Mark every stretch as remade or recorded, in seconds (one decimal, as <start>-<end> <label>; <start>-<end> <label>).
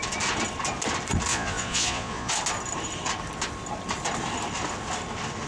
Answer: 0.0-1.3 recorded; 1.3-2.3 remade; 2.3-5.5 recorded